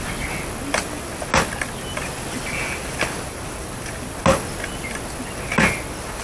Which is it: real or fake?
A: real